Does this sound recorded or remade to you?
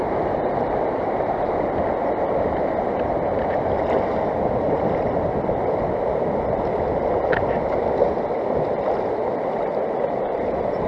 recorded